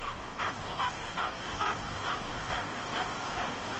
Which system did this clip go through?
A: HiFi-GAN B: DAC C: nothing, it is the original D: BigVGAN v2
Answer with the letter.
B